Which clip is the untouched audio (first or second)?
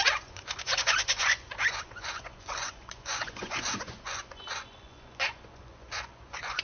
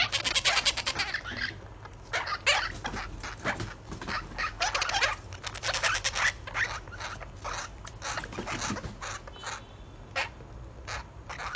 second